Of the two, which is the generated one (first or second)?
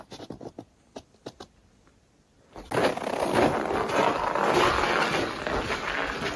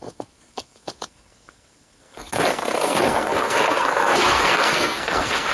second